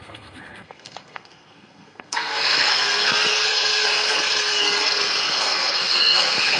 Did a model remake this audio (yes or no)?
yes